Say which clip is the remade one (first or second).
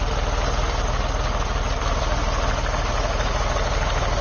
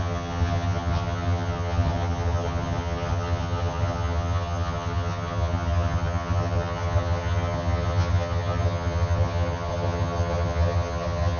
second